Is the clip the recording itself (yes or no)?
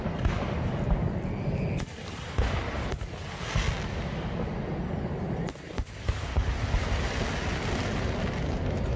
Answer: yes